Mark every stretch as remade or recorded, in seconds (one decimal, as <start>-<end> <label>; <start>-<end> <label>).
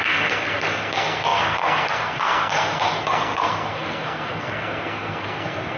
0.0-5.8 remade